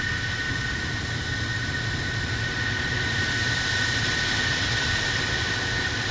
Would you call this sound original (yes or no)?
yes